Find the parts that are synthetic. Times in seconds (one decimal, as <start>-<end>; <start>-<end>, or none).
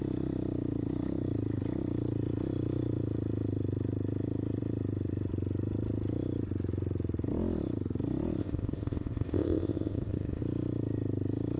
8.4-10.4